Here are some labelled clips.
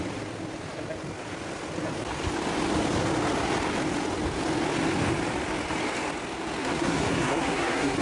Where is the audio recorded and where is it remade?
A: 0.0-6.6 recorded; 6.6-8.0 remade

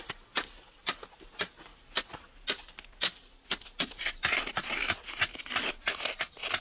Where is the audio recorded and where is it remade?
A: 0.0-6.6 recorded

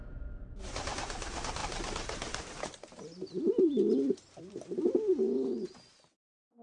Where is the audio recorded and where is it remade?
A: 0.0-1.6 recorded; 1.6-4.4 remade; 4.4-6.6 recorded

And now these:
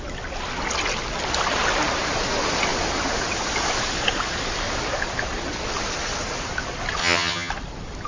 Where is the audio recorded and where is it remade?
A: 0.0-7.0 recorded; 7.0-7.5 remade; 7.5-8.1 recorded